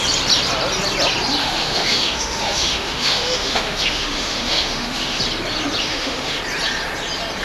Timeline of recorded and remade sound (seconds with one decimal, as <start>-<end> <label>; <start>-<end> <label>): 0.0-1.4 recorded; 1.4-5.2 remade; 5.2-5.8 recorded; 5.8-6.4 remade; 6.4-7.4 recorded